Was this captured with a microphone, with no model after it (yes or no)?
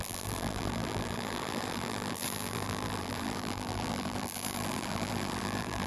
no